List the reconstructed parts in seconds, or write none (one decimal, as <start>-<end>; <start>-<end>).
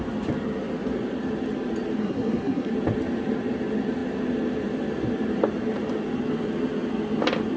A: 2.0-2.7